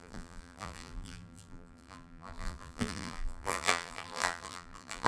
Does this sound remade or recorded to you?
remade